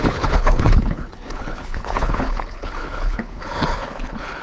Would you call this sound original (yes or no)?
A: no